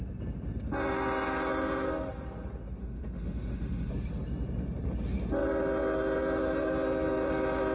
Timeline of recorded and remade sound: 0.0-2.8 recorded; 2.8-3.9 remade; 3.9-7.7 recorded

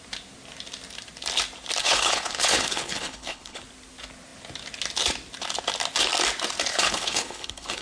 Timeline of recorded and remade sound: 0.0-1.8 recorded; 1.8-3.6 remade; 3.6-6.7 recorded; 6.7-7.8 remade

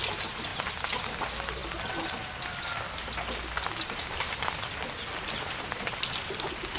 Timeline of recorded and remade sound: 0.0-6.8 recorded

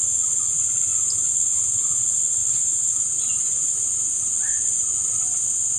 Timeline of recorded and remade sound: 0.0-2.4 recorded; 2.4-3.8 remade; 3.8-5.2 recorded; 5.2-5.8 remade

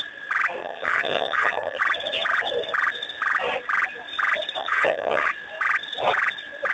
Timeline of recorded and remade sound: 0.0-0.6 recorded; 0.6-1.8 remade; 1.8-4.6 recorded; 4.6-5.3 remade; 5.3-6.7 recorded

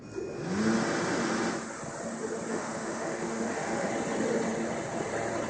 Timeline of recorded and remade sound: 0.0-2.5 recorded; 2.5-3.9 remade; 3.9-5.5 recorded

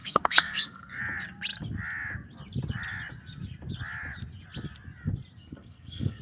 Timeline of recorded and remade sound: 0.0-1.0 remade; 1.0-5.4 recorded; 5.4-6.2 remade

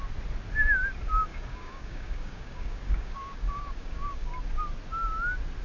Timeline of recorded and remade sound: 0.0-1.3 recorded; 1.3-4.3 remade; 4.3-5.6 recorded